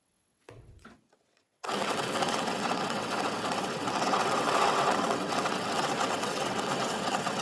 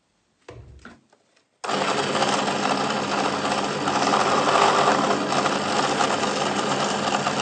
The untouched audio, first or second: second